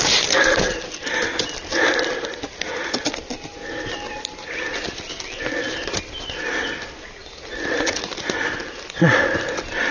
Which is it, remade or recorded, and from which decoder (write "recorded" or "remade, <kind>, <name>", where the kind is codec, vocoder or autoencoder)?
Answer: recorded